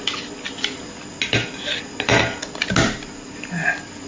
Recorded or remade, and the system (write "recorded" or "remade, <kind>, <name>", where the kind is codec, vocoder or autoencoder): recorded